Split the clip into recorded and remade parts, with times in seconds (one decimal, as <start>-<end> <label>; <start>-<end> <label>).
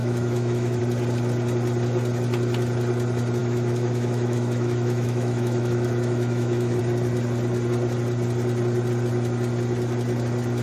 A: 0.0-0.8 remade; 0.8-3.4 recorded; 3.4-6.8 remade; 6.8-10.6 recorded